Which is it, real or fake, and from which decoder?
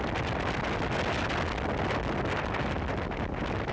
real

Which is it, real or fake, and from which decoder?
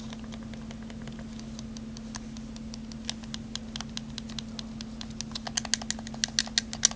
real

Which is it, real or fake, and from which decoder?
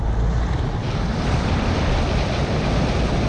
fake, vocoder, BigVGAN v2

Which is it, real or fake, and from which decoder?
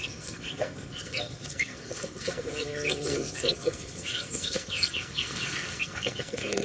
fake, codec, SNAC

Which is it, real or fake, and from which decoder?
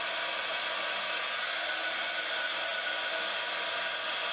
real